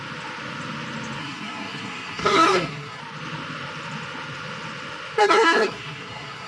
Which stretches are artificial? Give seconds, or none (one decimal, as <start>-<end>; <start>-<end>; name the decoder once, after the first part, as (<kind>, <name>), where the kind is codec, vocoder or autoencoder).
1.2-3.0 (codec, SNAC); 5.2-6.5